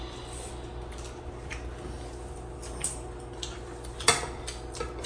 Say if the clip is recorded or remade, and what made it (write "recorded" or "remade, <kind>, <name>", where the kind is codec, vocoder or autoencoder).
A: recorded